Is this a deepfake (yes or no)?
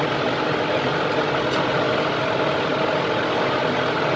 no